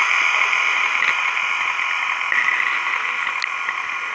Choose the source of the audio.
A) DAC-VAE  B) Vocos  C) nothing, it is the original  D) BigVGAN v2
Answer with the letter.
C